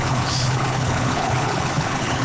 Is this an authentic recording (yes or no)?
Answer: no